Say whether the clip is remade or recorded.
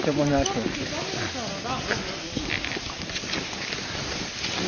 recorded